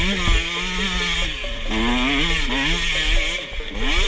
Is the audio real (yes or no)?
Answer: yes